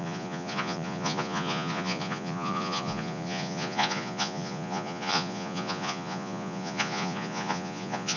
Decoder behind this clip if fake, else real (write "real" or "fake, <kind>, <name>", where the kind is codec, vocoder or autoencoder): fake, vocoder, Vocos